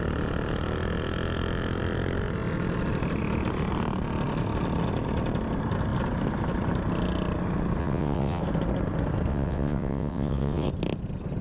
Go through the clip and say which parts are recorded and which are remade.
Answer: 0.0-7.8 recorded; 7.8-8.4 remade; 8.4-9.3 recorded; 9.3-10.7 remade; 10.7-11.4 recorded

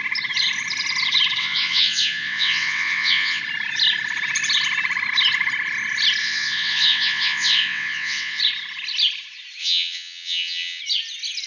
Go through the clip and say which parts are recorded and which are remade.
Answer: 0.0-1.4 recorded; 1.4-3.4 remade; 3.4-6.2 recorded; 6.2-8.4 remade; 8.4-9.6 recorded; 9.6-10.8 remade; 10.8-11.5 recorded

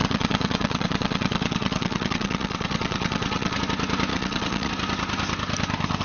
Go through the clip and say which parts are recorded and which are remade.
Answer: 0.0-3.6 remade; 3.6-4.1 recorded; 4.1-4.7 remade; 4.7-6.0 recorded

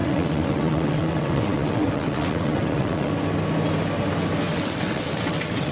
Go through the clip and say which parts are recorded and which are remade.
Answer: 0.0-3.1 remade; 3.1-4.5 recorded; 4.5-5.7 remade